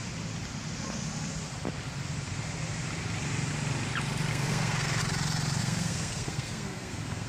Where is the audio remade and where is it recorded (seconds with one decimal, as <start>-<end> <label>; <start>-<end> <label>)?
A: 0.0-4.3 recorded; 4.3-5.0 remade; 5.0-5.6 recorded; 5.6-7.3 remade